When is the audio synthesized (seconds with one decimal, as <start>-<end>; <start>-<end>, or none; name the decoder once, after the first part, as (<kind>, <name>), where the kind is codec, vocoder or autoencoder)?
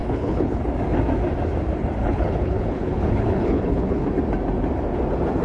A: 0.0-0.6 (codec, HILCodec); 2.0-4.1